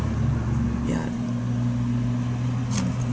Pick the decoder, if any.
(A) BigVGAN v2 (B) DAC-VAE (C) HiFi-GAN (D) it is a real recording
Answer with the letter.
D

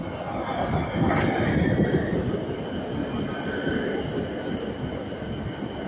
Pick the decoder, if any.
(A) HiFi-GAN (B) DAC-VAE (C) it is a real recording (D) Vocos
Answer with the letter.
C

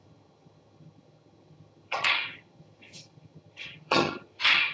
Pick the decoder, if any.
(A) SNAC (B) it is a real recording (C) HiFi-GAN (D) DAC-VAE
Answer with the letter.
C